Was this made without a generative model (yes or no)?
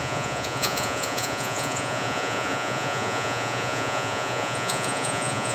no